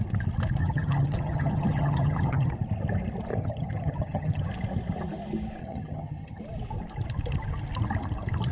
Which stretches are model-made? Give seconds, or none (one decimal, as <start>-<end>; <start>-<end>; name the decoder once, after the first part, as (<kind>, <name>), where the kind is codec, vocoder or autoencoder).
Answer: 0.6-2.5 (vocoder, HiFi-GAN); 3.3-4.5; 5.6-6.4

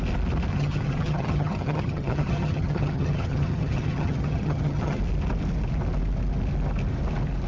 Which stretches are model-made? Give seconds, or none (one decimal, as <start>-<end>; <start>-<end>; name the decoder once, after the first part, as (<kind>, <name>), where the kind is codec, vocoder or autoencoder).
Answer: 0.5-5.0 (vocoder, HiFi-GAN)

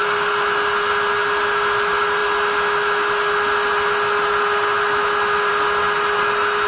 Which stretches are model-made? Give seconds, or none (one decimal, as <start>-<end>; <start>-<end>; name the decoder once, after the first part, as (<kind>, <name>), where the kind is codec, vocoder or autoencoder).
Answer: none

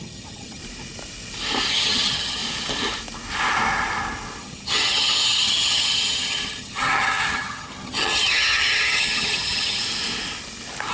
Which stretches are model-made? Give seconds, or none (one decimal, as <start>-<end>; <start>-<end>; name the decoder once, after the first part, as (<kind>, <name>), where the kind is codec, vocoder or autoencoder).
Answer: 0.0-0.6 (vocoder, HiFi-GAN); 1.7-2.4; 4.4-9.8

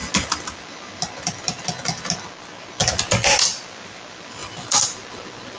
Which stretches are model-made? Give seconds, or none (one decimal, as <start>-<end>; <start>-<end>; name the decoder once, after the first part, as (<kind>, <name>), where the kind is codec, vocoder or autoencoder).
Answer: none

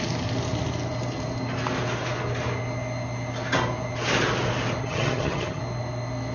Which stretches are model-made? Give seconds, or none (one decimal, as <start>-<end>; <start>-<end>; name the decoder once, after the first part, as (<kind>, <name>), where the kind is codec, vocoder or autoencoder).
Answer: 4.8-5.6 (vocoder, HiFi-GAN)

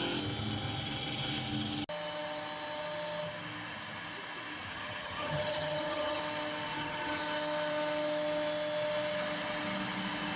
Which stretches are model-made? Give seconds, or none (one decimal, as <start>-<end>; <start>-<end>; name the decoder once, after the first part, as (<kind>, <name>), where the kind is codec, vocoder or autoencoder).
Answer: 4.7-6.2 (vocoder, HiFi-GAN); 6.7-7.2

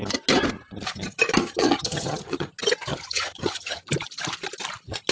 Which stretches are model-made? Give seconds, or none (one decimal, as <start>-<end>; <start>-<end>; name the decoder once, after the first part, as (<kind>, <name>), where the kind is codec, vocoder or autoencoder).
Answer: 1.4-2.5 (vocoder, HiFi-GAN); 2.9-3.9